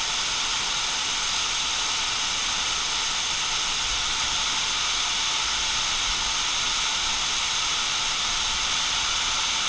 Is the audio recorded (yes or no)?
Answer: yes